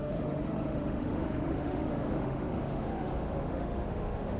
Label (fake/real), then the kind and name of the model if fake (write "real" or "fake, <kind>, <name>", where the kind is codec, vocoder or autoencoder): fake, autoencoder, DAC-VAE